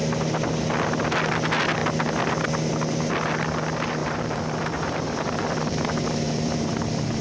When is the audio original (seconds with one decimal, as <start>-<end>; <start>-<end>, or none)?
0.0-4.0; 6.8-7.2